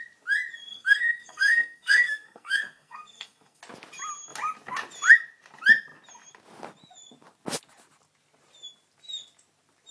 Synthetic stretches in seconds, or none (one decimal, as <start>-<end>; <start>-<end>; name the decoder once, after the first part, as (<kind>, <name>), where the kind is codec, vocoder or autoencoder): 0.7-3.6 (codec, SNAC)